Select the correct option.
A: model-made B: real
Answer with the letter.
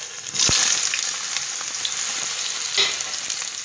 B